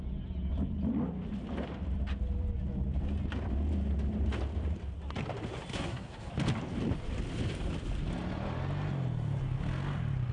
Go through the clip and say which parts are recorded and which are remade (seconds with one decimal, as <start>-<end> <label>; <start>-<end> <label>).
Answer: 0.0-5.7 recorded; 5.7-6.3 remade; 6.3-10.3 recorded